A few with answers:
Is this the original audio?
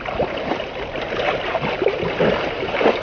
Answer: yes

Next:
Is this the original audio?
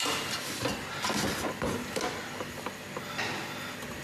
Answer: yes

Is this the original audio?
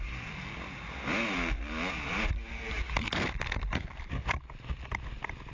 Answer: yes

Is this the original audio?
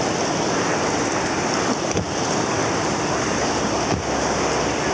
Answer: yes